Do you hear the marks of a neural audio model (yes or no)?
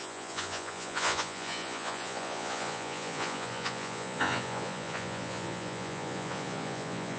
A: yes